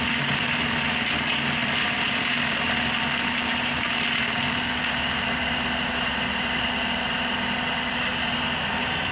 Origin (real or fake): real